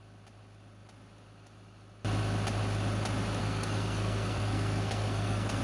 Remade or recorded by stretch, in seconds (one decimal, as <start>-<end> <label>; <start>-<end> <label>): 0.0-3.4 recorded; 3.4-5.6 remade